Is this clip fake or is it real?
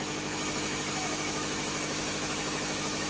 fake